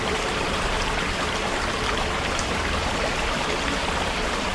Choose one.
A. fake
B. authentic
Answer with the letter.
B